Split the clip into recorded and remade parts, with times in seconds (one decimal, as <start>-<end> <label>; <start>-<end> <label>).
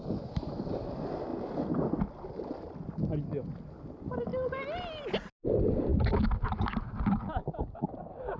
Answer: 0.0-8.4 recorded